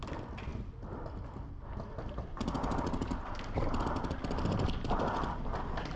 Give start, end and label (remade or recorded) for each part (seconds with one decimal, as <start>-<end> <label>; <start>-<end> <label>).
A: 0.0-6.0 recorded